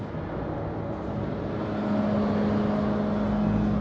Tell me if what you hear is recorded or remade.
recorded